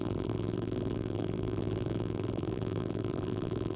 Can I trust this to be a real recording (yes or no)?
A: no